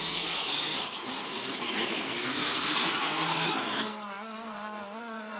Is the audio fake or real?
fake